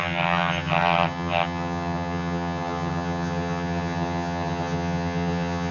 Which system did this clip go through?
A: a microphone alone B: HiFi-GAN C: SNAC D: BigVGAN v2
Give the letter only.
B